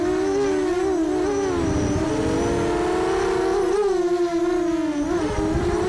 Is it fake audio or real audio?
real